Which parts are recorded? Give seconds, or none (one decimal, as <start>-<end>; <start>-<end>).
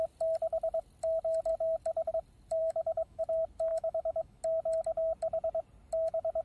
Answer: 0.0-2.6; 3.2-3.7; 4.4-6.4